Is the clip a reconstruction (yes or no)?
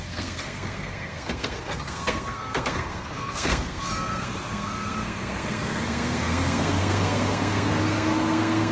yes